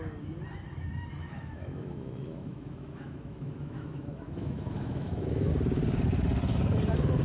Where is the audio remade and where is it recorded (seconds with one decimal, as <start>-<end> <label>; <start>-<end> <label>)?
0.0-1.2 recorded; 1.2-5.5 remade; 5.5-7.2 recorded